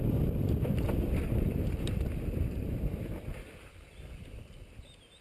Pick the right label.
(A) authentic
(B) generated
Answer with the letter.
B